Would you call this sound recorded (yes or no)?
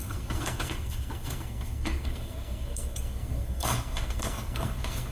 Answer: no